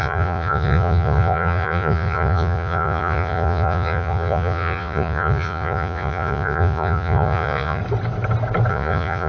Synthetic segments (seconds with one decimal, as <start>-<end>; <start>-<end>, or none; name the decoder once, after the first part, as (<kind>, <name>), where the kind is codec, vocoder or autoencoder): 0.0-7.8 (vocoder, Vocos); 8.7-9.3